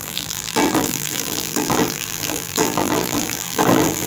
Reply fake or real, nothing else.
fake